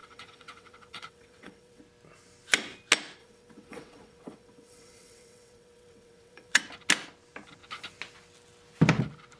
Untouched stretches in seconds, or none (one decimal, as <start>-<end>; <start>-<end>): 1.8-3.2; 6.6-9.4